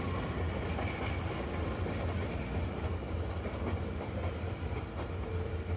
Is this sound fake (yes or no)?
no